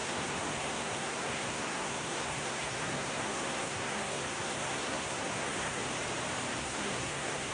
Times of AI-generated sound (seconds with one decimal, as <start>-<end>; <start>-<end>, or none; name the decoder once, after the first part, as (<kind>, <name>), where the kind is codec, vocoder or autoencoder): 0.0-5.8 (codec, SNAC); 6.6-7.5